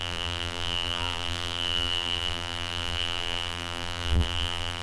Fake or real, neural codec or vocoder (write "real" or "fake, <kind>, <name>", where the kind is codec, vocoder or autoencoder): fake, vocoder, BigVGAN v2